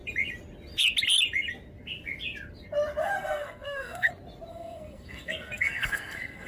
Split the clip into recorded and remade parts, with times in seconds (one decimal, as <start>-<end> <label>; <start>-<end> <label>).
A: 0.0-3.0 recorded; 3.0-4.1 remade; 4.1-4.5 recorded; 4.5-6.5 remade